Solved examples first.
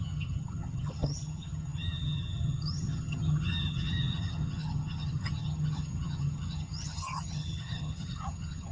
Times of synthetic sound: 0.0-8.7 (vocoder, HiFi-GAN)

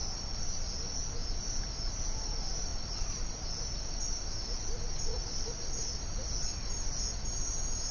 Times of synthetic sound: none

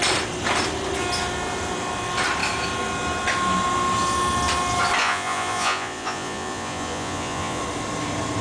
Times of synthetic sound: 5.0-7.6 (vocoder, Vocos)

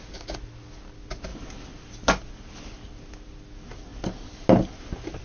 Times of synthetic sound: none

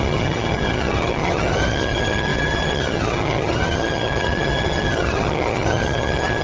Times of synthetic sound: 0.0-6.4 (vocoder, HiFi-GAN)